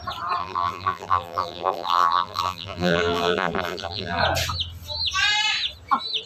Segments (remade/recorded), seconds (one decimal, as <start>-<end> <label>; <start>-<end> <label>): 0.0-0.4 recorded; 0.4-4.2 remade; 4.2-6.3 recorded